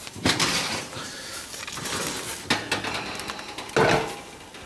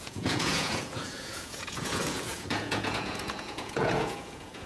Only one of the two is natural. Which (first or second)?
first